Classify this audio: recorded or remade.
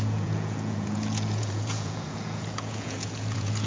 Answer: remade